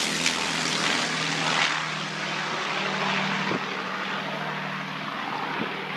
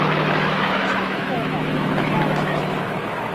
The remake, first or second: second